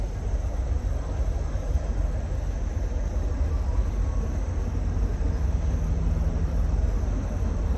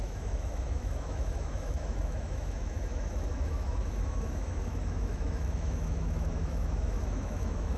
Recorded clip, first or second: first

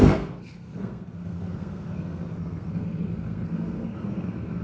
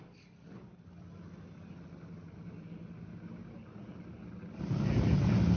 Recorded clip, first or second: second